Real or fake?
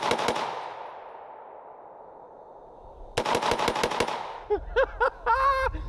real